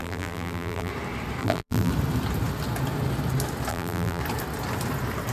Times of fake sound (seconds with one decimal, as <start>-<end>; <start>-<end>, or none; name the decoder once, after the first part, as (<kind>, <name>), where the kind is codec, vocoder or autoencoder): 0.0-0.9 (vocoder, BigVGAN v2); 1.4-1.9; 3.7-4.2